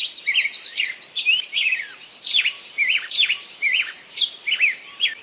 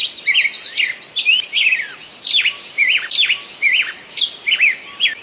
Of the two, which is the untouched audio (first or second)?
second